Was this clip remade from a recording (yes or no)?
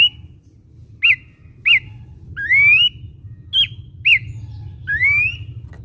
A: no